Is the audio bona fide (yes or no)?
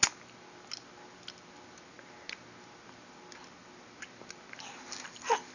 yes